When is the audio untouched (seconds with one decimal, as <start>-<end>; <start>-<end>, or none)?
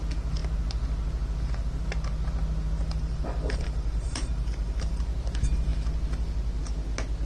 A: 0.0-2.8; 5.0-7.3